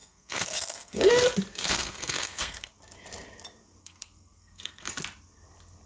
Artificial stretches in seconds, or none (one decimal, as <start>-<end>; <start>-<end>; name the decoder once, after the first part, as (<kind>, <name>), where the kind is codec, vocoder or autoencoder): 0.0-1.1 (codec, SNAC); 1.5-2.7; 3.8-4.9